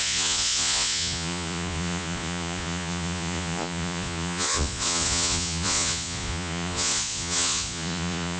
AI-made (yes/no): yes